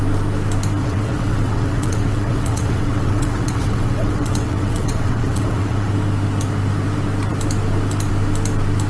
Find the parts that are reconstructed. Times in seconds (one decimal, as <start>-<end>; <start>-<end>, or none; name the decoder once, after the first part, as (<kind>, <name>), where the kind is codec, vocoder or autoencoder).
0.8-5.9 (vocoder, WaveNeXt)